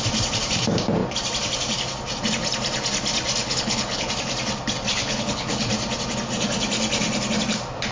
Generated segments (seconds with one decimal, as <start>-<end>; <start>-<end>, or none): 3.4-4.1; 4.9-5.7

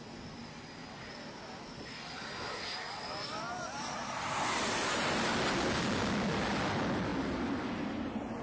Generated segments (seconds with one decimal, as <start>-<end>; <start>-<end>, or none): none

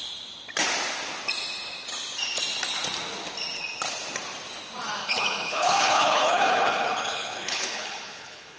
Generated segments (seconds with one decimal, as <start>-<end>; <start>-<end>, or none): 5.0-8.6

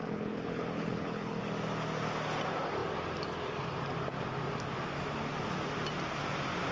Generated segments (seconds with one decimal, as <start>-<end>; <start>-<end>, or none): 0.0-1.4